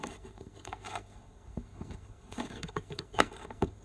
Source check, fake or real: fake